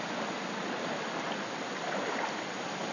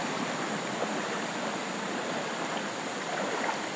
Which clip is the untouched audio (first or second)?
first